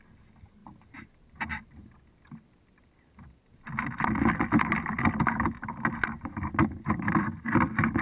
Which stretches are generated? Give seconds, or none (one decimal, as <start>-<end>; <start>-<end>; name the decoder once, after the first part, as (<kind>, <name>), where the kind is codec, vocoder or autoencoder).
0.6-3.7 (vocoder, BigVGAN v2); 6.6-7.4